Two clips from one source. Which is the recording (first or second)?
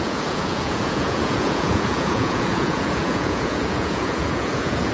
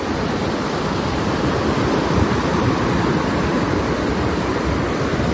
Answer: second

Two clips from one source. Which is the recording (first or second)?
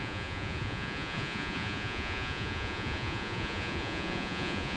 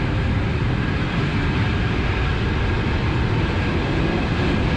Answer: second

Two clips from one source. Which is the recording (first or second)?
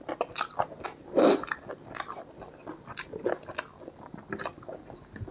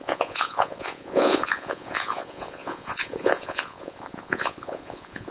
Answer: first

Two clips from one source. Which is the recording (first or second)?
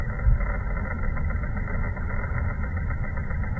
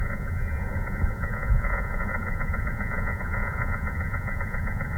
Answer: first